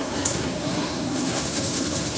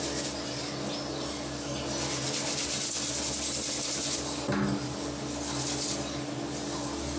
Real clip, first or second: second